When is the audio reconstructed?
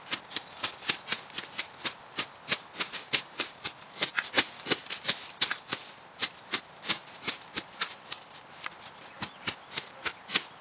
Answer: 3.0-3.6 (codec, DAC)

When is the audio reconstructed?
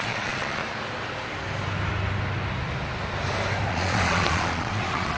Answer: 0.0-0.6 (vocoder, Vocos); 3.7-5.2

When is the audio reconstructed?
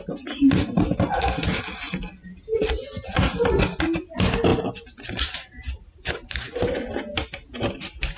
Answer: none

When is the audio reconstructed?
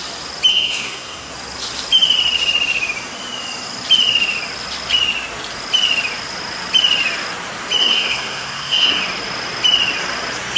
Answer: 0.5-1.3 (codec, SNAC); 7.8-9.0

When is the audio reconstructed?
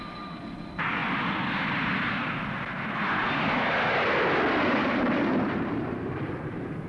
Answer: 0.0-1.0 (vocoder, BigVGAN v2); 4.6-6.9